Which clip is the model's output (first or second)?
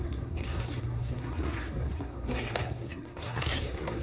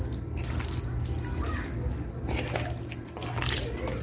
first